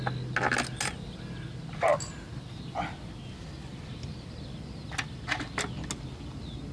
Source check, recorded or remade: recorded